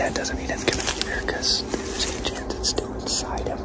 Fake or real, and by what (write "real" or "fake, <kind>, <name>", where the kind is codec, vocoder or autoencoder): real